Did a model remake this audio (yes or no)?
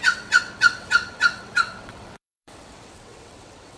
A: yes